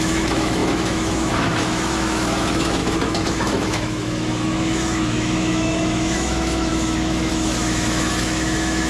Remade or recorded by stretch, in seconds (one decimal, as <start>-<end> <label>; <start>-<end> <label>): 0.0-8.9 remade